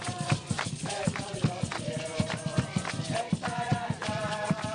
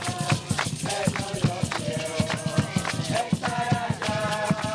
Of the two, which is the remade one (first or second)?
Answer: first